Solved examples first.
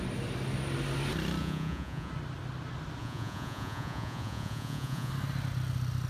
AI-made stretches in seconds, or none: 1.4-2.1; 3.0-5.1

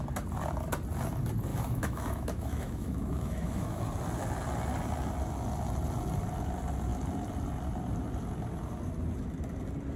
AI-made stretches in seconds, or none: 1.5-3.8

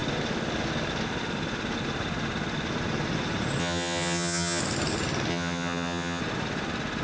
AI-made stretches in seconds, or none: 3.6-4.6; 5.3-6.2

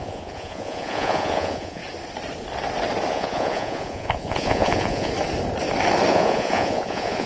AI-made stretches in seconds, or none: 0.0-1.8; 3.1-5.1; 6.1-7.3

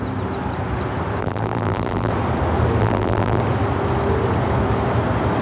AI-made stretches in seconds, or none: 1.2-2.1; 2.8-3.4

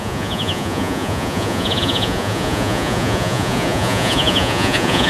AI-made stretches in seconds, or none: 0.0-5.1